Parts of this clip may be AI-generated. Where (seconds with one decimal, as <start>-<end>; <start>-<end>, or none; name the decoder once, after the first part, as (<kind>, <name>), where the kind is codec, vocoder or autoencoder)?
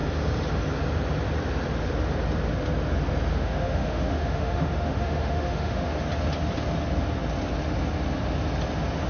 3.3-5.9 (autoencoder, DAC-VAE)